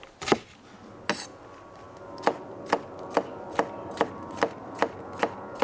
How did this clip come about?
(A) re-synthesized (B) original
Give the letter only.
B